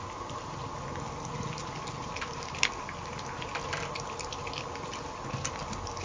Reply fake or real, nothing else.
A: real